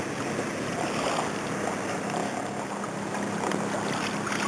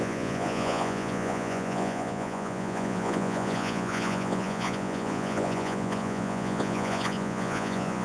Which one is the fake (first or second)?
second